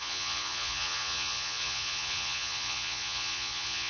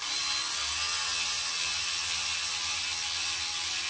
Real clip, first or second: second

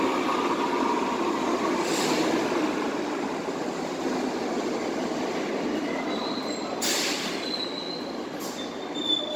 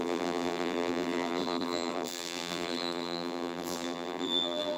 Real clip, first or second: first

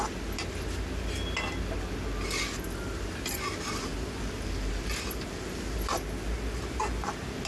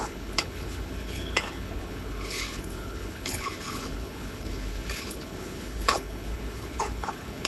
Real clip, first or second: first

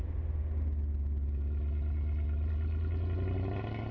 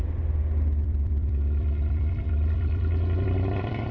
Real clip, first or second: first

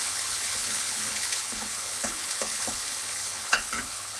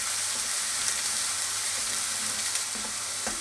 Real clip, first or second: second